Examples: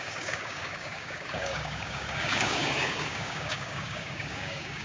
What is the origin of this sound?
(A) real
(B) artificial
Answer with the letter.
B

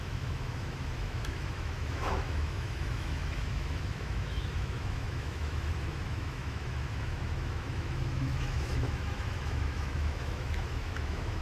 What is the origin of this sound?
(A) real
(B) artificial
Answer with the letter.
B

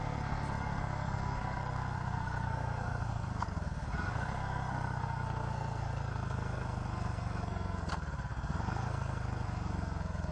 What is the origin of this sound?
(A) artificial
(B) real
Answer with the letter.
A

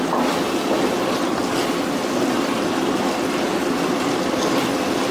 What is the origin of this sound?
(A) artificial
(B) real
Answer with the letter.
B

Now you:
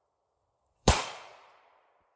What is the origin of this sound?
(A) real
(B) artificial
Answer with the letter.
B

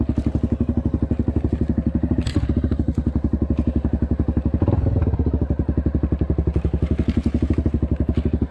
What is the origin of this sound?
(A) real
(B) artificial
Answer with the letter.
A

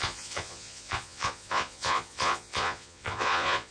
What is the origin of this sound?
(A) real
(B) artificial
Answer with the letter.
B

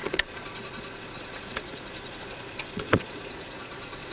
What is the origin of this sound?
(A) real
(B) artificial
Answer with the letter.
B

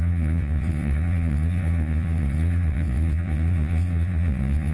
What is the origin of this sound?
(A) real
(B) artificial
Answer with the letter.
B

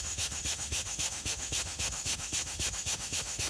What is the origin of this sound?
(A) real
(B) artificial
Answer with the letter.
B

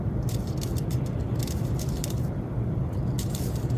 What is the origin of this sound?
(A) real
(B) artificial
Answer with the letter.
B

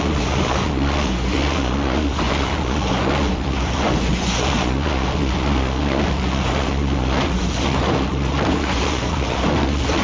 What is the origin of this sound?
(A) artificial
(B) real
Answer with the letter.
A